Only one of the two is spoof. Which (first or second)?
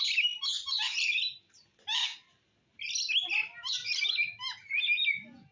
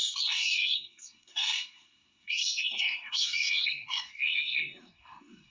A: second